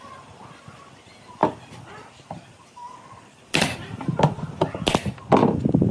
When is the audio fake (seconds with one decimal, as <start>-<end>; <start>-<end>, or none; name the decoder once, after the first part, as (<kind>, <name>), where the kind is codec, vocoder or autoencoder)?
1.4-4.2 (vocoder, BigVGAN v2)